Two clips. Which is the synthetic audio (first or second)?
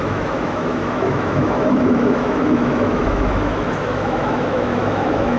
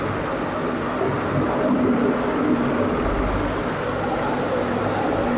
first